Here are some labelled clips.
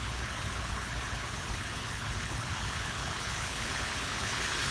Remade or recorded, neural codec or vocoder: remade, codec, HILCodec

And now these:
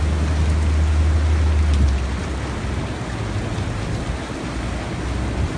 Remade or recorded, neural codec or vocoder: recorded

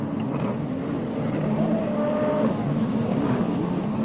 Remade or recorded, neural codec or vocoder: recorded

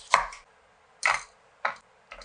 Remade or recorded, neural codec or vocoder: recorded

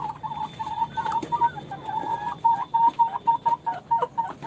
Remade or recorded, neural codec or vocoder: recorded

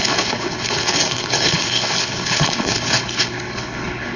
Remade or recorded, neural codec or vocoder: remade, codec, HILCodec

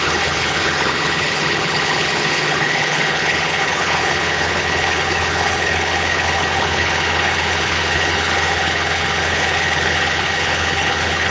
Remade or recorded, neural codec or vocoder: remade, codec, HILCodec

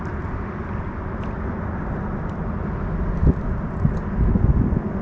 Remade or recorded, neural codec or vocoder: recorded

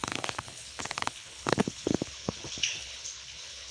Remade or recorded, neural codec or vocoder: remade, codec, HILCodec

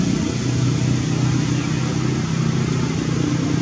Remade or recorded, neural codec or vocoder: recorded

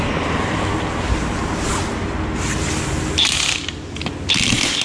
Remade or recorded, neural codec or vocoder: recorded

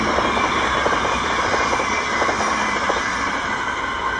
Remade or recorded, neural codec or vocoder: recorded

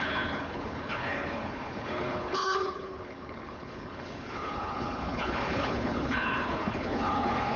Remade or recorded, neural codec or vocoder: remade, codec, HILCodec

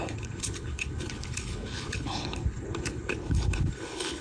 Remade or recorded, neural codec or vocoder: remade, codec, HILCodec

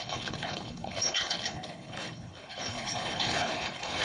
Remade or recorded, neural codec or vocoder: remade, codec, HILCodec